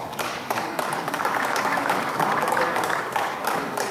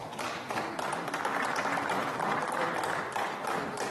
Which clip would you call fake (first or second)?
first